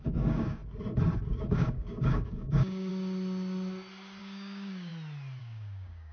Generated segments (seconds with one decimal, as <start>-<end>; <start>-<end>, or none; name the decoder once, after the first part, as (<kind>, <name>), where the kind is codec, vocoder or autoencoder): 0.0-0.6 (codec, DAC); 1.2-2.9; 4.2-4.9; 5.4-6.1